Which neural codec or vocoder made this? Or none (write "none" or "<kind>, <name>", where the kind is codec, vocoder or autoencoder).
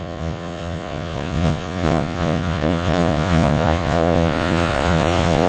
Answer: vocoder, Vocos